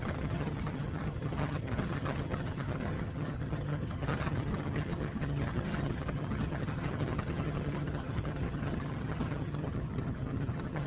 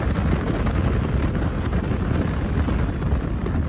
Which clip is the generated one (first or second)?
first